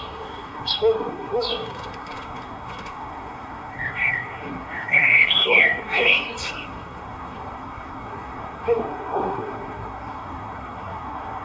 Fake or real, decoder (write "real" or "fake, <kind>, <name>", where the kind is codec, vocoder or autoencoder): fake, codec, SNAC